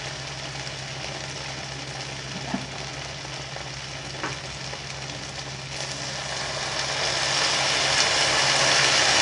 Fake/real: real